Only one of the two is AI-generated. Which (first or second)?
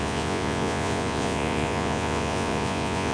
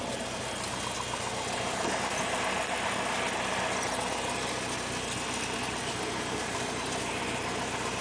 first